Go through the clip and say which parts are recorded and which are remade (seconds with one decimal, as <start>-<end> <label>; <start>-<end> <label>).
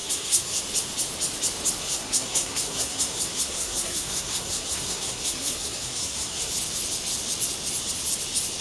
0.0-0.6 remade; 0.6-1.8 recorded; 1.8-6.5 remade; 6.5-8.6 recorded